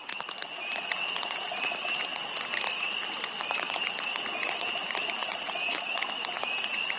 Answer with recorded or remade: recorded